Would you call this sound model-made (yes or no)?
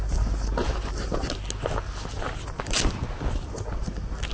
no